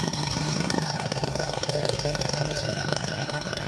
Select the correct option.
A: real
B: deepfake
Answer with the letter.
B